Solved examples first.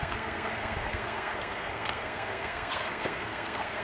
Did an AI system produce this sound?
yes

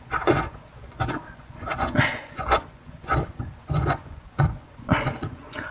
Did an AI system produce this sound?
yes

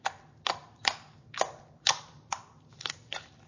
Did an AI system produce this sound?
no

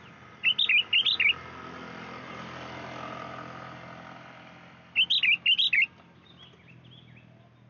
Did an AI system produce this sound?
no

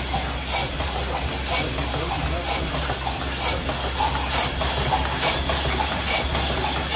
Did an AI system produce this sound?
no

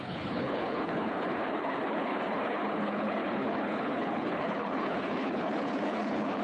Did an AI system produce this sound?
yes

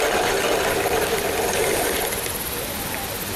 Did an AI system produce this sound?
no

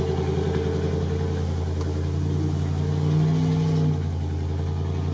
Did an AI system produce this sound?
no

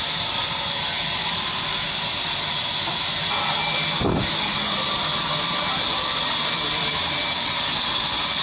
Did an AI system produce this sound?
no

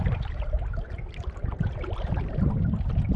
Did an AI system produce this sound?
no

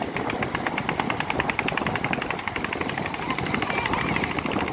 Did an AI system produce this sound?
no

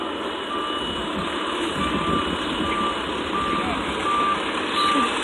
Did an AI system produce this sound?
no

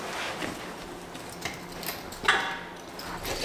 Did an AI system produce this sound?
no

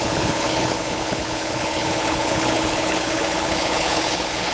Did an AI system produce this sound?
yes